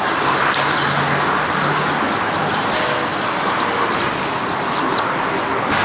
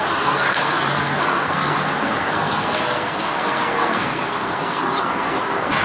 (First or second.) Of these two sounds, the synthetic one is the second